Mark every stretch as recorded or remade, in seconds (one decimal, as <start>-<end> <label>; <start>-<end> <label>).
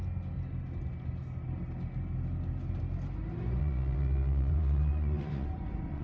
0.0-3.6 recorded; 3.6-6.0 remade